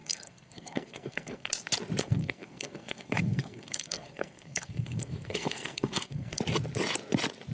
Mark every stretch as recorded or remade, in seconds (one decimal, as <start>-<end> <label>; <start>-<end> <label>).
0.0-1.5 remade; 1.5-2.0 recorded; 2.0-6.4 remade; 6.4-7.5 recorded